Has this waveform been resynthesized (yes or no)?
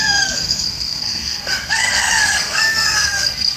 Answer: yes